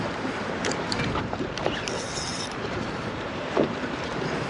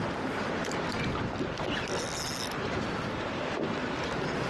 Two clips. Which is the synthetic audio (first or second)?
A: first